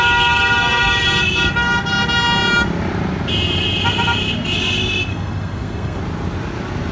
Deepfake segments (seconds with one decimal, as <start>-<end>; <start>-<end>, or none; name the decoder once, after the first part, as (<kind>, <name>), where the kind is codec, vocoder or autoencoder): 5.1-6.0 (codec, SNAC)